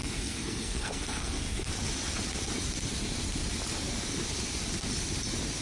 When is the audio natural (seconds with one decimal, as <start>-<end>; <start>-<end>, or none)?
1.7-5.6